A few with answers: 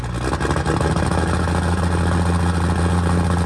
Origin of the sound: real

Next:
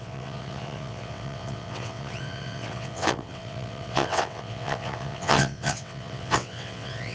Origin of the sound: fake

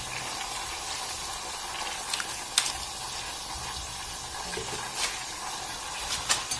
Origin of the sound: real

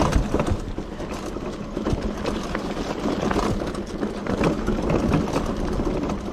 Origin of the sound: real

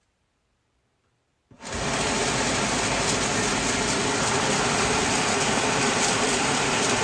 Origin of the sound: real